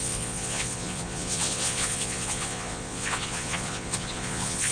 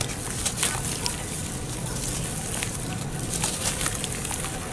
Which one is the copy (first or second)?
first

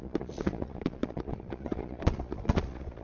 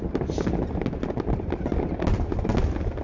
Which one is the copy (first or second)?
first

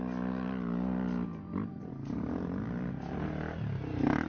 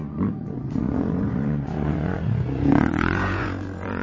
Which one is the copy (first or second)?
second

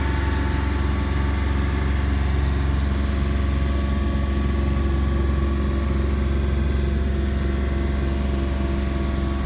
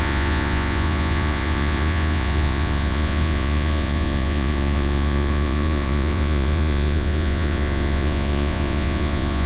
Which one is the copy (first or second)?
second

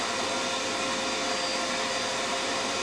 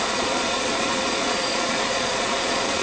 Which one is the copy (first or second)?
second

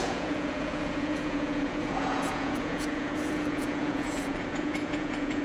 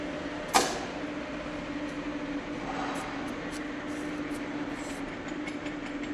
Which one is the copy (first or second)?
first